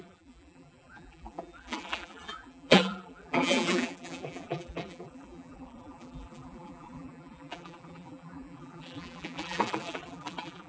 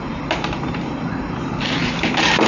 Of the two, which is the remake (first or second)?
first